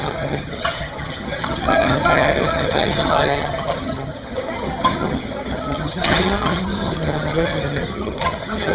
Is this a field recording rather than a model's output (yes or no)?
no